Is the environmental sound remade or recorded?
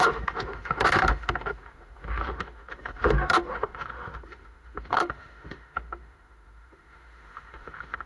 remade